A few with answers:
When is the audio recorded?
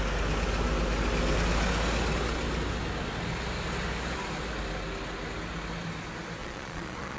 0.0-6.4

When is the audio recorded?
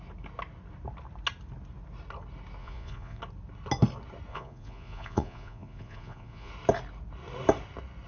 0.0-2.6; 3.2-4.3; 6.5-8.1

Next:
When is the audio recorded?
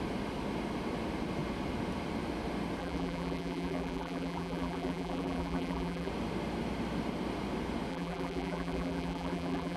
0.0-2.8; 6.1-7.9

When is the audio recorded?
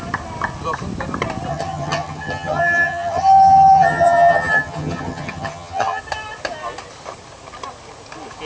0.0-1.5; 6.0-8.5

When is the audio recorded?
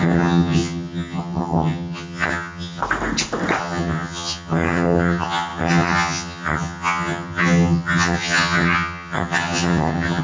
2.8-3.6